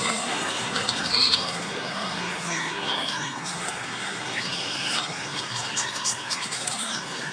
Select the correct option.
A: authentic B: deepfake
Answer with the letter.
B